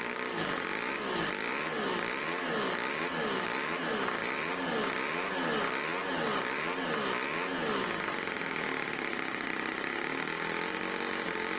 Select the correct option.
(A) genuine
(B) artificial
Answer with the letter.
A